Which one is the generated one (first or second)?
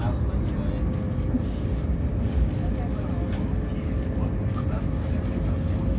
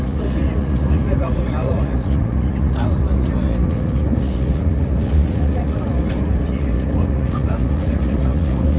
second